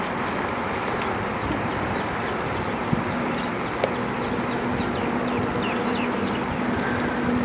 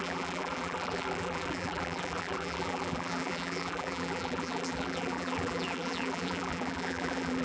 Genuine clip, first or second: first